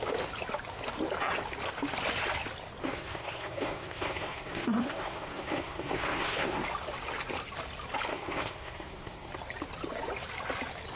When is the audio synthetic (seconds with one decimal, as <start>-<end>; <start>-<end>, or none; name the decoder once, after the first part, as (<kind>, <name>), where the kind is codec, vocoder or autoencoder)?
2.8-6.6 (codec, SNAC); 8.1-9.3